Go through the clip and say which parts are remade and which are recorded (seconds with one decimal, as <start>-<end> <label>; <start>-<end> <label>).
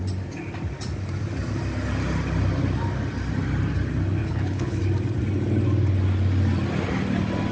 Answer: 0.0-4.2 recorded; 4.2-4.8 remade; 4.8-7.5 recorded